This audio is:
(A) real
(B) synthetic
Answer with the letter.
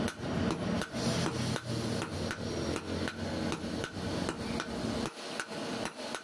A